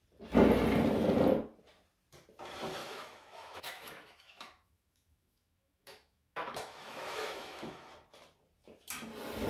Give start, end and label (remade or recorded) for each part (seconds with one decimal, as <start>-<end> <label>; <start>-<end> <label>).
0.0-2.8 recorded; 2.8-7.9 remade; 7.9-9.5 recorded